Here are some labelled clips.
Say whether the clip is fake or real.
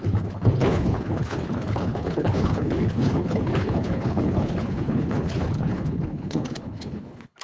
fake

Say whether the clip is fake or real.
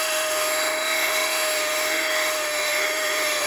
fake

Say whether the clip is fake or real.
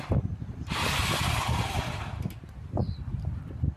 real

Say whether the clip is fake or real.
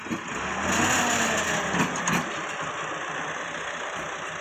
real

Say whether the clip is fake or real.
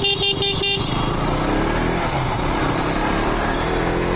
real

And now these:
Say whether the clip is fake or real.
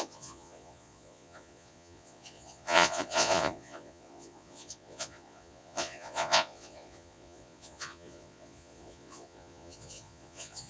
fake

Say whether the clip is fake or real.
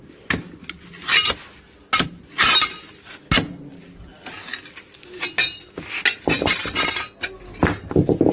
real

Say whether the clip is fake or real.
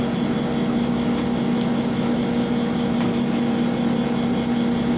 real